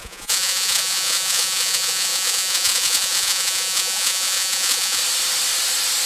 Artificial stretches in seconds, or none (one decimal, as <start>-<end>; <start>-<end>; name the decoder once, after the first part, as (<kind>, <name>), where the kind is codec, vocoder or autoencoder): 0.0-5.0 (vocoder, Vocos)